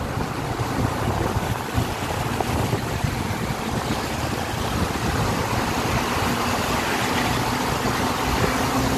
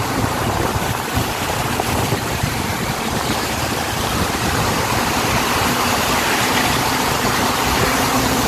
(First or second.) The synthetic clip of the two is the second